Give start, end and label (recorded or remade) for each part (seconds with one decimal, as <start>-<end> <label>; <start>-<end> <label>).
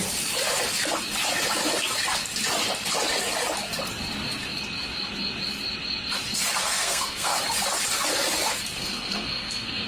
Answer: 0.0-6.6 recorded; 6.6-7.4 remade; 7.4-8.8 recorded; 8.8-9.9 remade